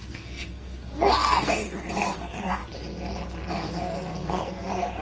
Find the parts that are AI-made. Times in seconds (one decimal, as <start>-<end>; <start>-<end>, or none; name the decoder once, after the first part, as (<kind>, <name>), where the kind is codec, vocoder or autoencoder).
0.0-2.6 (codec, SNAC); 3.5-5.0